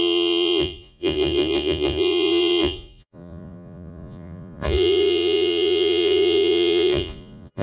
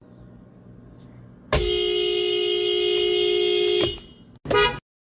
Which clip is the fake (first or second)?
first